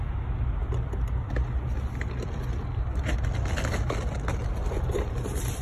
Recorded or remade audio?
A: recorded